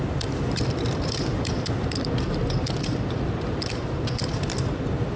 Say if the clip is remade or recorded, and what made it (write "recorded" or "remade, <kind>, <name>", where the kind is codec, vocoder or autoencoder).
remade, vocoder, BigVGAN v2